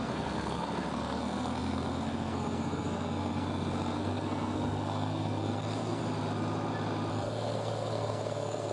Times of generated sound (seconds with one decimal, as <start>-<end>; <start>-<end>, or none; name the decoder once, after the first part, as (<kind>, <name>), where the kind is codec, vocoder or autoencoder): 0.0-6.0 (codec, SNAC); 7.1-8.7